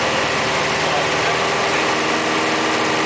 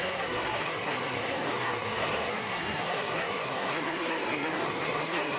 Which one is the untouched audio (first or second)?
first